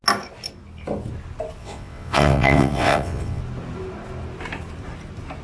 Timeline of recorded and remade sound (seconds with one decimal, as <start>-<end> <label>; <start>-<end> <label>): 0.0-1.6 recorded; 1.6-3.4 remade; 3.4-5.4 recorded